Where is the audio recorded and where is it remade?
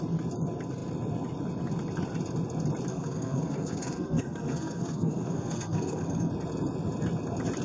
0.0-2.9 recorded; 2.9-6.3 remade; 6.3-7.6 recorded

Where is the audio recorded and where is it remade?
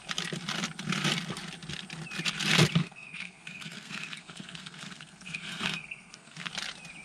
0.0-2.8 recorded; 2.8-6.5 remade; 6.5-7.0 recorded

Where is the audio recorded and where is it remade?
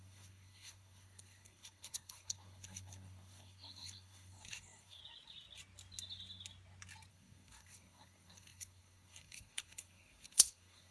0.0-5.0 remade; 5.0-7.1 recorded; 7.1-10.9 remade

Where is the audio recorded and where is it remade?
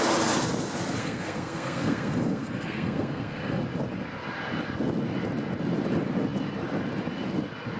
0.0-1.0 recorded; 1.0-3.6 remade; 3.6-7.8 recorded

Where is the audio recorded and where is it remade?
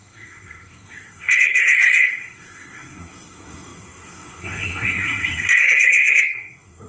0.0-6.9 remade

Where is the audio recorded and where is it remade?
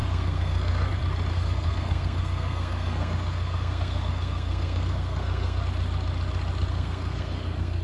0.0-0.9 remade; 0.9-1.3 recorded; 1.3-5.6 remade; 5.6-6.7 recorded; 6.7-7.8 remade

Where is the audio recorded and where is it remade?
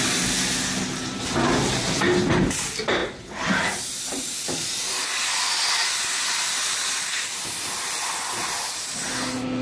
0.0-9.6 recorded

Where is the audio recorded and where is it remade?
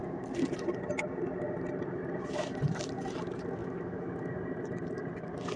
0.0-5.6 recorded